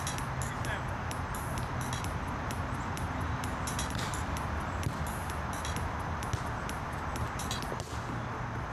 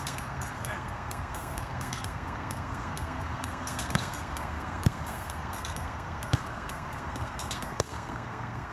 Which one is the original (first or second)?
first